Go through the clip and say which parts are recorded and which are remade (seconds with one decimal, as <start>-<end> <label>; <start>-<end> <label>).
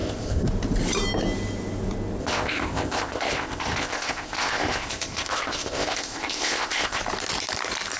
0.0-0.5 remade; 0.5-2.2 recorded; 2.2-7.0 remade; 7.0-8.0 recorded